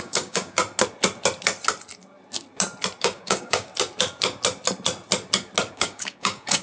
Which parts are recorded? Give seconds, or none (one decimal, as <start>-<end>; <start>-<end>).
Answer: 0.6-3.0; 3.7-5.7